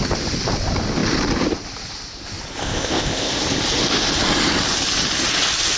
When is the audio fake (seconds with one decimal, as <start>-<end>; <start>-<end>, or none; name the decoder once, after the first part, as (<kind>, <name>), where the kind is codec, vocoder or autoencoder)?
2.6-3.3 (codec, ZipCodec)

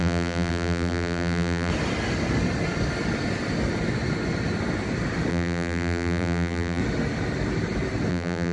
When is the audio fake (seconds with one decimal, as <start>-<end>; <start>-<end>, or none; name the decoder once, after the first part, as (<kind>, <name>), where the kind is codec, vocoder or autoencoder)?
0.0-1.7 (vocoder, BigVGAN v2); 5.3-6.8; 8.1-8.5

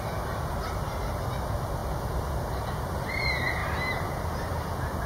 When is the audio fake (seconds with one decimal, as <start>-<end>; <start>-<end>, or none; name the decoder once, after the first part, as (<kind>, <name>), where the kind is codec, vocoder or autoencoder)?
1.8-2.3 (vocoder, BigVGAN v2)